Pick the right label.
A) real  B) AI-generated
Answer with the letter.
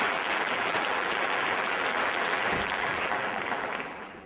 B